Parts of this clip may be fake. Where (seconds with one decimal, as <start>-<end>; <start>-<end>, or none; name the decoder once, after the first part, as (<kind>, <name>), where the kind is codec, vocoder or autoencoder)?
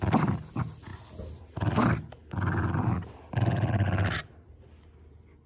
none